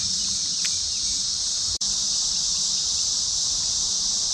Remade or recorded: remade